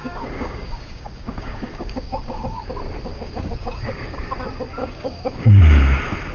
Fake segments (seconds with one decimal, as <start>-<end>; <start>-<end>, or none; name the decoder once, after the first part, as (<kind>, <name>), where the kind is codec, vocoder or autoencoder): 0.0-2.7 (codec, DAC); 3.1-4.3; 4.8-5.6